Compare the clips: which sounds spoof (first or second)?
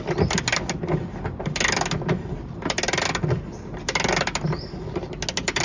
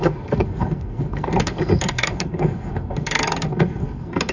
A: second